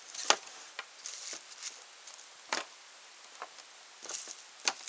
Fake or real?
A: real